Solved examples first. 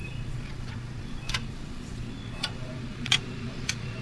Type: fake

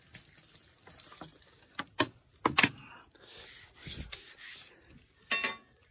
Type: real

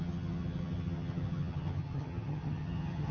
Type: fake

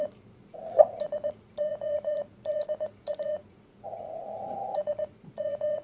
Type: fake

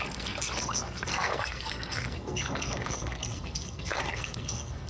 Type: fake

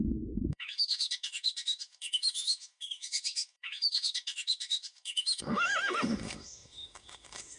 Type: fake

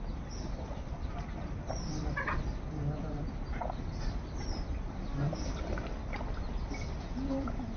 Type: fake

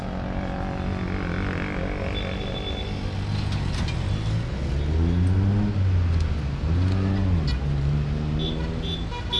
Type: real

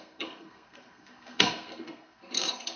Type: fake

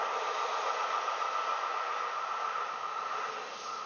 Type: real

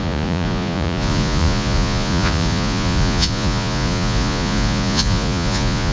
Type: fake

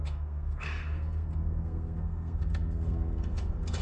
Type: fake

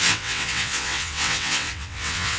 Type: fake